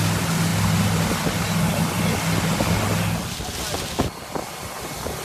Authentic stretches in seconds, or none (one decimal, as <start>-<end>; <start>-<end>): 0.0-5.2